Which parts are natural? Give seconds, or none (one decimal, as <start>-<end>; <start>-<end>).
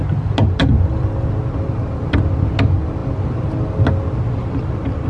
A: 0.0-5.1